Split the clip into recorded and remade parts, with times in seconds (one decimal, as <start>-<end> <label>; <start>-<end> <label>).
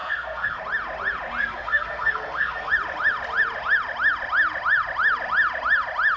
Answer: 0.0-0.6 remade; 0.6-1.4 recorded; 1.4-2.7 remade; 2.7-6.2 recorded